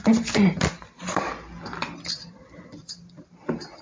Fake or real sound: real